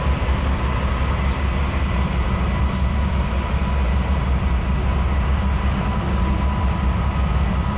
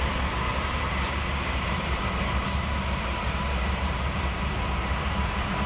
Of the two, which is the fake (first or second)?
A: second